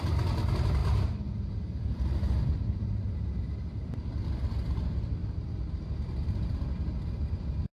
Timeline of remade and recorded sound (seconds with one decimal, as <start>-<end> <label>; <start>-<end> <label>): 0.0-0.8 recorded; 0.8-3.0 remade; 3.0-7.8 recorded